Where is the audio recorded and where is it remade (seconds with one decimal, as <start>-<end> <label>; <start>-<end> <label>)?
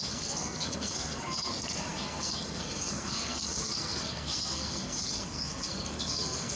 0.0-6.6 remade